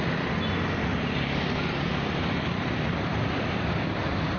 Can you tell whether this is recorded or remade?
remade